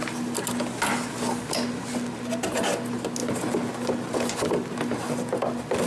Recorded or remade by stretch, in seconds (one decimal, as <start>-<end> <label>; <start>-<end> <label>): 0.0-5.9 recorded